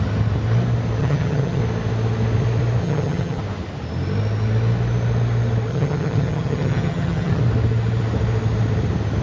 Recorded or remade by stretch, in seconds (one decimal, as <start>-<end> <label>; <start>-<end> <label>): 0.0-1.0 recorded; 1.0-1.6 remade; 1.6-2.8 recorded; 2.8-3.4 remade; 3.4-5.7 recorded; 5.7-7.4 remade; 7.4-9.2 recorded